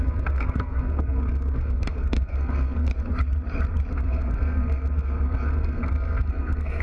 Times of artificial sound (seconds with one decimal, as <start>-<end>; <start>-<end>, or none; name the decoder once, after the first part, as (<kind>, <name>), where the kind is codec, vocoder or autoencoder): 0.0-2.9 (codec, SNAC); 3.9-6.8